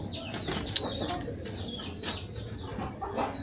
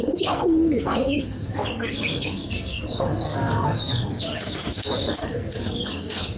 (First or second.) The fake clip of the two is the second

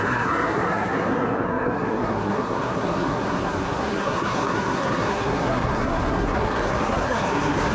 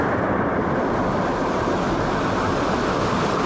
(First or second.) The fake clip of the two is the first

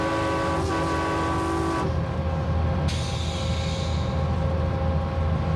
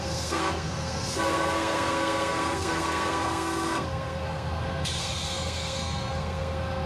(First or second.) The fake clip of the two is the second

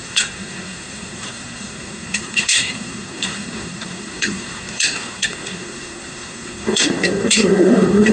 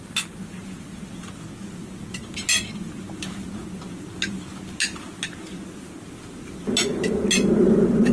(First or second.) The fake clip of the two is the first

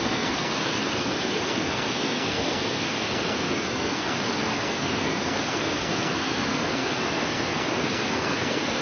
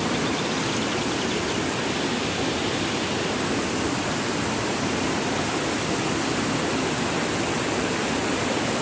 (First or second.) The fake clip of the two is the first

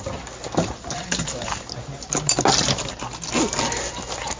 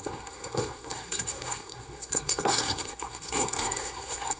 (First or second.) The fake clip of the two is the second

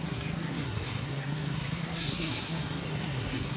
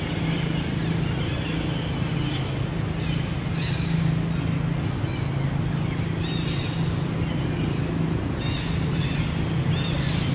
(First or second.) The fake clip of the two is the first